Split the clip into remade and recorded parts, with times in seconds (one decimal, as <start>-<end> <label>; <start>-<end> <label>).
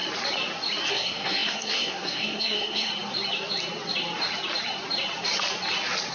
0.0-0.9 recorded; 0.9-2.9 remade; 2.9-6.1 recorded